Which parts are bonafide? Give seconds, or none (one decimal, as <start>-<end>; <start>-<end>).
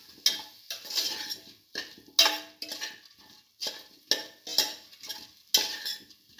0.0-6.4